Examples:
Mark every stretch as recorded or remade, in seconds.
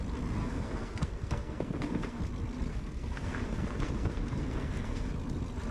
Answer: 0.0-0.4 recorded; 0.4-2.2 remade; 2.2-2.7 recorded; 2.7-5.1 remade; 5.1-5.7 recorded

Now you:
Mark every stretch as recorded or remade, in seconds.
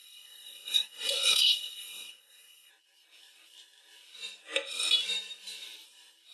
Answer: 0.0-2.7 remade; 2.7-6.3 recorded